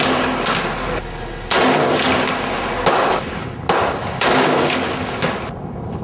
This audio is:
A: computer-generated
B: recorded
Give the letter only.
B